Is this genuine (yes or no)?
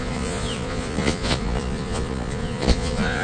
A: no